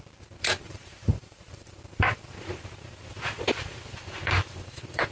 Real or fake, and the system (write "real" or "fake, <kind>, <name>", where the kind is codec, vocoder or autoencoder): fake, vocoder, BigVGAN v2